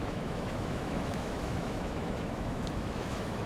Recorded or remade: remade